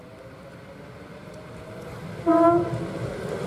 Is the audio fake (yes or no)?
no